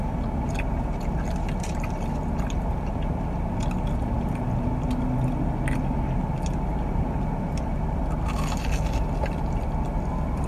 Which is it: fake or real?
real